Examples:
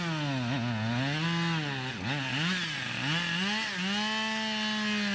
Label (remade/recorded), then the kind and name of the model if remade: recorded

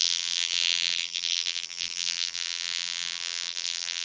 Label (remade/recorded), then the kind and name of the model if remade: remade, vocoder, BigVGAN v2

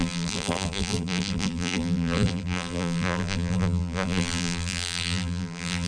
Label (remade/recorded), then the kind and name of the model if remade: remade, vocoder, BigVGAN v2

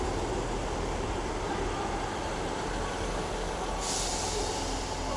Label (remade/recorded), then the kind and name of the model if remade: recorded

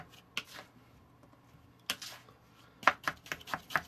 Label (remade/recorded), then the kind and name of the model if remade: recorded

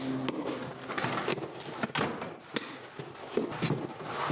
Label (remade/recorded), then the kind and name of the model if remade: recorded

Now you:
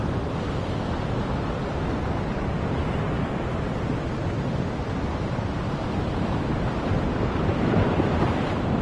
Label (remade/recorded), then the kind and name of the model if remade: recorded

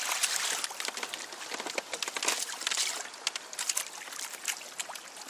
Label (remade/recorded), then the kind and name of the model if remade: recorded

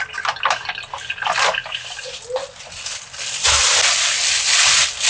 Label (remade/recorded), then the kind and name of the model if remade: recorded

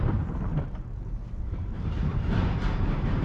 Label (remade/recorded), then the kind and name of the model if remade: remade, vocoder, BigVGAN v2